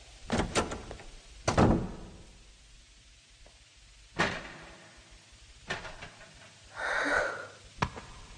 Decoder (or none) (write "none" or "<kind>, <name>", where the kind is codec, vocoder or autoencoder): none